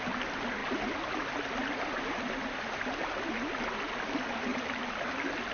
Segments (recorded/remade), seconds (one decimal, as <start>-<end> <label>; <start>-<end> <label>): 0.0-5.5 recorded